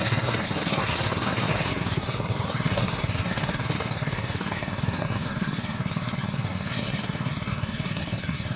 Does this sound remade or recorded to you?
remade